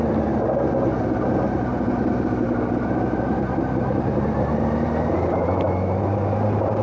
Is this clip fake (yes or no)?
no